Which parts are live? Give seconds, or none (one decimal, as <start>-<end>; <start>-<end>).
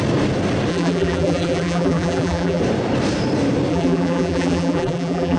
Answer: 0.0-0.7; 2.6-3.7